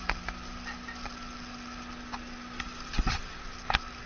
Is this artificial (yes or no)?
no